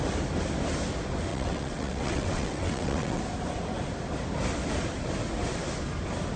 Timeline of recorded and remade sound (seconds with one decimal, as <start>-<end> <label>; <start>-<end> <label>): 0.0-1.3 recorded; 1.3-3.2 remade; 3.2-6.4 recorded